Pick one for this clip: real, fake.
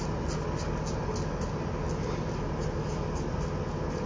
real